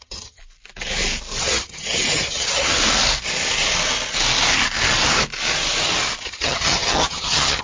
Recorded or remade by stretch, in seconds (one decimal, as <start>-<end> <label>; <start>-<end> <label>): 0.0-0.4 remade; 0.4-1.4 recorded; 1.4-2.8 remade; 2.8-6.2 recorded; 6.2-7.6 remade